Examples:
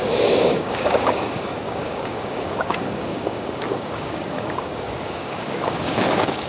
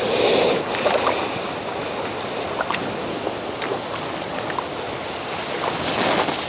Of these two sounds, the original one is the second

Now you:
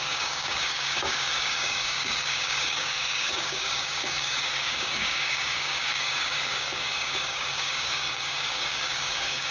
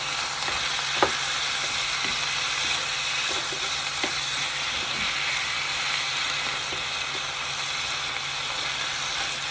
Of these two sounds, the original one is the second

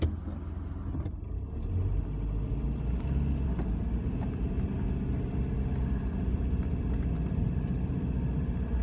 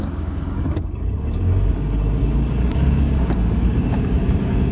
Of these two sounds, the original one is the first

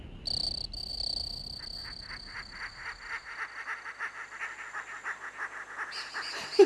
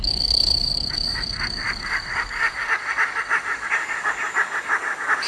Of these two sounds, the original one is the first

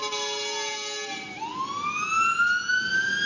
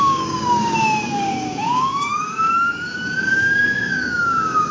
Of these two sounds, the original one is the first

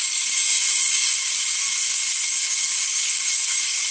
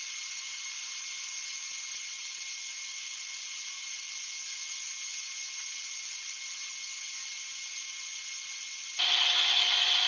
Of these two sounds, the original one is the second